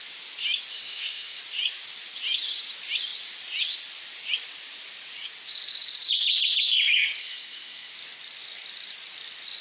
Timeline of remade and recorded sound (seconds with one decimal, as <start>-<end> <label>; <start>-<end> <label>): 0.0-0.7 recorded; 0.7-1.4 remade; 1.4-7.2 recorded; 7.2-7.9 remade; 7.9-9.6 recorded